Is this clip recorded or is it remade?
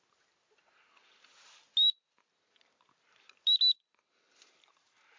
recorded